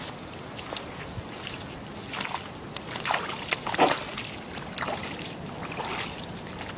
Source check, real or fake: real